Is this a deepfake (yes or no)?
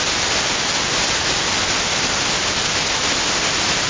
no